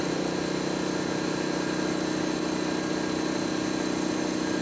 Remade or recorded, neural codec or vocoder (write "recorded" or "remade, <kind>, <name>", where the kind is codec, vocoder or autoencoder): recorded